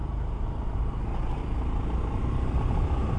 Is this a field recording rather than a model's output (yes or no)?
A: yes